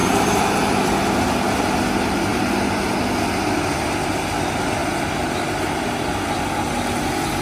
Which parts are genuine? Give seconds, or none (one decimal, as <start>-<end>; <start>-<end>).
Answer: 0.6-7.4